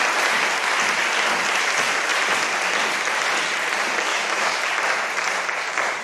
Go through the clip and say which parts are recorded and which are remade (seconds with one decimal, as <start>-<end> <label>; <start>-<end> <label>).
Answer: 0.0-4.1 recorded; 4.1-4.6 remade; 4.6-6.0 recorded

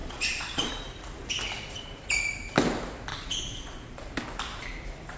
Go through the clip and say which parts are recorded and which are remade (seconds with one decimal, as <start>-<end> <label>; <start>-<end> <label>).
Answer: 0.0-0.7 remade; 0.7-3.1 recorded; 3.1-4.1 remade; 4.1-5.2 recorded

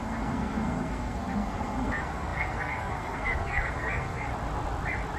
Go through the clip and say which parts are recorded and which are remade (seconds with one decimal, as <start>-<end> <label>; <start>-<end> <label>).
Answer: 0.0-4.3 remade; 4.3-5.2 recorded

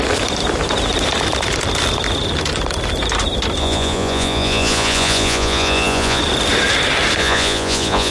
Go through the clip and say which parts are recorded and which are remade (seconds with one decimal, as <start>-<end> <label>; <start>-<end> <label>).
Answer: 0.0-3.6 recorded; 3.6-6.2 remade; 6.2-7.2 recorded; 7.2-8.1 remade

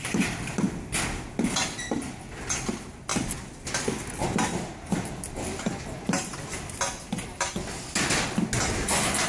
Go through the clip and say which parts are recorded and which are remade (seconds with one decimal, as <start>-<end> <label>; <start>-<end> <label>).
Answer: 0.0-9.3 recorded